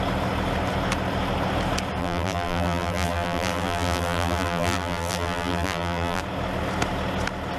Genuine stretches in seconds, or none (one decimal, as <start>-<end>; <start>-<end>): 0.0-2.0; 6.2-7.6

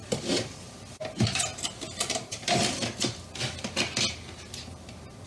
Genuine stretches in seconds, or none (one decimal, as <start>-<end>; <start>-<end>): 0.0-5.3